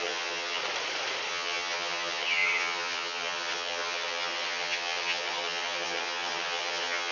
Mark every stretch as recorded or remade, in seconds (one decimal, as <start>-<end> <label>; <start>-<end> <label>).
0.0-0.6 remade; 0.6-1.3 recorded; 1.3-7.1 remade